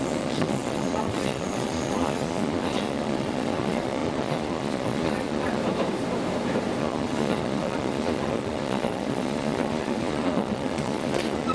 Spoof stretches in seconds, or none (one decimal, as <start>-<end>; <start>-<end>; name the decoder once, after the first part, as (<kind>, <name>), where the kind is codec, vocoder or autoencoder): 0.0-5.6 (vocoder, Vocos); 6.8-11.5